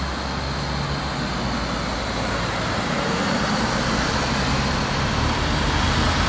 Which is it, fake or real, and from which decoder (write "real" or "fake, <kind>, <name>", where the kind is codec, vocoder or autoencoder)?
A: real